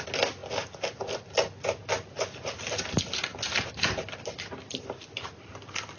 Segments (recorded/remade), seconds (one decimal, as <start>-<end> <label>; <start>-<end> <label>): 0.0-6.0 recorded